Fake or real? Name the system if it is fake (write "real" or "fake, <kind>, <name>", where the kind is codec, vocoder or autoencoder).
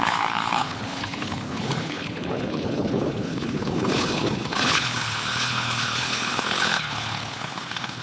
fake, codec, HILCodec